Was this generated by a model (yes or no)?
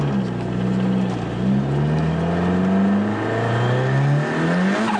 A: no